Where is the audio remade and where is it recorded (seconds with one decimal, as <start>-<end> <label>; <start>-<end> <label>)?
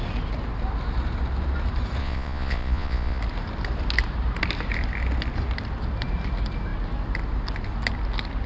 0.0-2.0 recorded; 2.0-3.2 remade; 3.2-8.5 recorded